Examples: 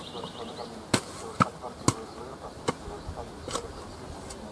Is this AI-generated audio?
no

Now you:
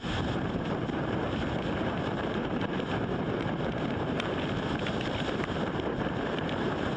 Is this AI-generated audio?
yes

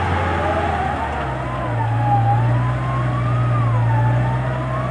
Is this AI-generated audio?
no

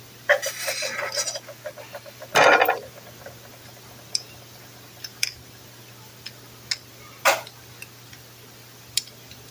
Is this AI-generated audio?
no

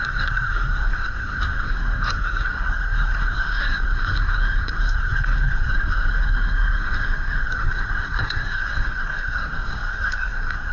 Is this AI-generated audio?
yes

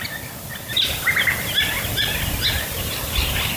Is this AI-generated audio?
no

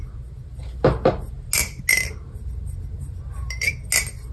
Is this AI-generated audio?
no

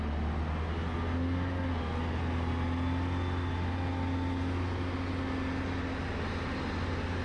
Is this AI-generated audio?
no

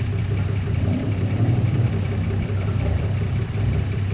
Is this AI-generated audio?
yes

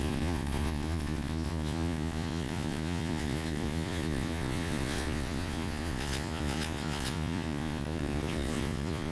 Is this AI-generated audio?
yes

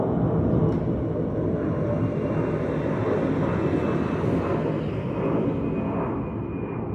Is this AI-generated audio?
no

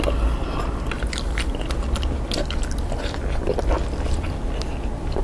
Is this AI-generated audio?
no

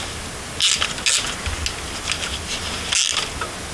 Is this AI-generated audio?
no